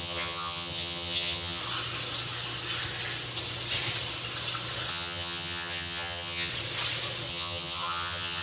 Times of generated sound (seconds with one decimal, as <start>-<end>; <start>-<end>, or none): 0.0-1.6; 4.9-6.5; 7.3-8.4